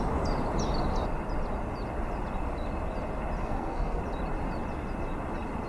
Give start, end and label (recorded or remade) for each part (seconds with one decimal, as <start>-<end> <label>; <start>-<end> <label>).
0.0-3.4 recorded; 3.4-4.0 remade; 4.0-5.7 recorded